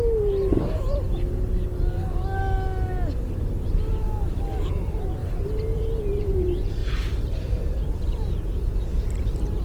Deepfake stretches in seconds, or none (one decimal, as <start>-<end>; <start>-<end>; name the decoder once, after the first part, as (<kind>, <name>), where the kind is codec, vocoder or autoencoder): 0.0-0.9 (vocoder, BigVGAN v2); 3.9-5.2; 6.0-9.6

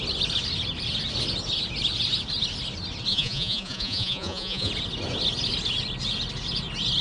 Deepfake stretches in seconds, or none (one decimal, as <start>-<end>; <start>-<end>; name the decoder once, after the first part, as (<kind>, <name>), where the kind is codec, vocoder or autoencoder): 3.1-4.7 (vocoder, Vocos)

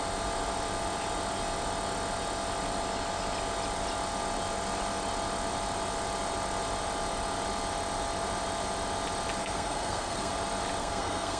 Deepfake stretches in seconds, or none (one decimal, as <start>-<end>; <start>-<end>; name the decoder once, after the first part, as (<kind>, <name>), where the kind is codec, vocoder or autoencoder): 9.4-10.3 (codec, SNAC); 10.8-11.4

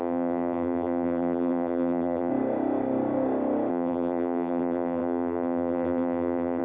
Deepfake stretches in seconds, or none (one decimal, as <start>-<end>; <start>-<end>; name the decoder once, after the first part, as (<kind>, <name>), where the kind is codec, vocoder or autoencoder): 0.0-2.3 (vocoder, BigVGAN v2); 3.7-6.6